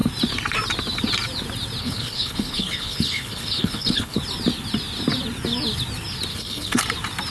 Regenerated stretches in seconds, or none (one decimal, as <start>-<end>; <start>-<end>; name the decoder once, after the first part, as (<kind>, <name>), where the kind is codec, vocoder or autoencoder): 1.8-4.2 (codec, HILCodec); 6.3-6.8